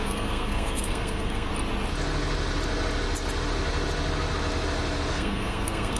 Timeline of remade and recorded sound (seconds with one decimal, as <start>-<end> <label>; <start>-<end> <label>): 0.0-1.5 remade; 1.5-5.1 recorded; 5.1-6.0 remade